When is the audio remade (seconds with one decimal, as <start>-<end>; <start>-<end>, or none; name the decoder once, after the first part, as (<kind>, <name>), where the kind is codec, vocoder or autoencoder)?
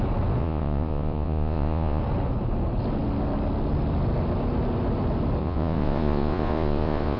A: 0.4-2.0 (vocoder, Vocos); 5.4-7.2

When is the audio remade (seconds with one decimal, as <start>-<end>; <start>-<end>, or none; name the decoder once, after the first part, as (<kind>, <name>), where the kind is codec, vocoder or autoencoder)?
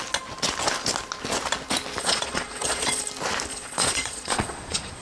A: 2.0-3.0 (vocoder, Vocos); 3.5-5.0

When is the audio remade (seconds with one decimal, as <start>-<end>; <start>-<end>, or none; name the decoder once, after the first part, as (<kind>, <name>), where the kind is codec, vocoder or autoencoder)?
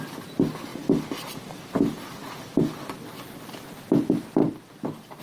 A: none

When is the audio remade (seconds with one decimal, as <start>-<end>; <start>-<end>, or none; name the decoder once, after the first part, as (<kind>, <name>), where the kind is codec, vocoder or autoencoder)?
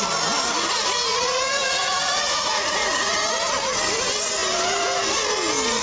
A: 1.1-3.2 (vocoder, Vocos)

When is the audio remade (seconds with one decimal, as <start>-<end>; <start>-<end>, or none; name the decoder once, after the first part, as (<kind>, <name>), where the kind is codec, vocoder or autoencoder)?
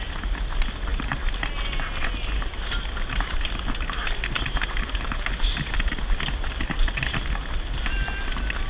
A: none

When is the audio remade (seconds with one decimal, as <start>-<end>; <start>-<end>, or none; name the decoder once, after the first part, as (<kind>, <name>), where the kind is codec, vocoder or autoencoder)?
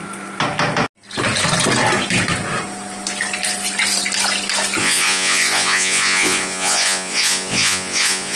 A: 4.8-8.4 (vocoder, Vocos)